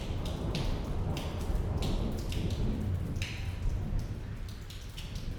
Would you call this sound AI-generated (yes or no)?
yes